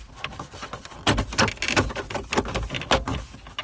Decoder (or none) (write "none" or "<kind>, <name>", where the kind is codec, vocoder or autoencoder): none